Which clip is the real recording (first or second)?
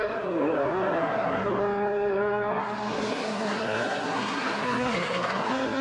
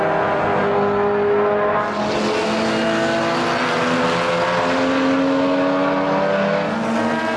second